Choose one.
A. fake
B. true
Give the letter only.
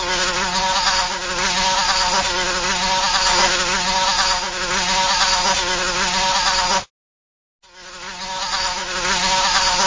B